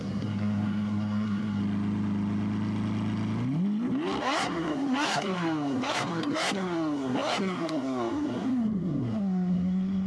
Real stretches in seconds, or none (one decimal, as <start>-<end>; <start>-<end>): 1.6-4.2